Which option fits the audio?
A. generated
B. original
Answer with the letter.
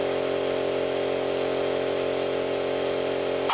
B